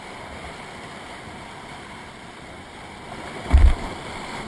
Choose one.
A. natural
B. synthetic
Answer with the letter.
B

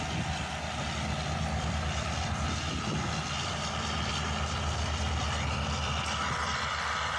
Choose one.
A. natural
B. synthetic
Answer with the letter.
B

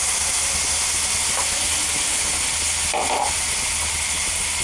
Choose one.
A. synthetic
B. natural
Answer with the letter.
B